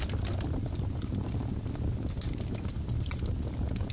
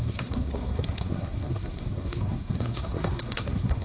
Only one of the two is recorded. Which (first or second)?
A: first